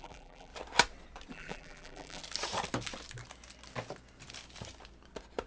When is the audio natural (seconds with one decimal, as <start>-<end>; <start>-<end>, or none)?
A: 0.5-1.3; 2.2-5.5